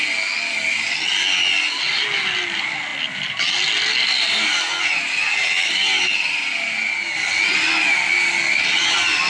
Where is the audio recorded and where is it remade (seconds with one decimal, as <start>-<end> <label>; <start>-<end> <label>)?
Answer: 0.0-9.3 recorded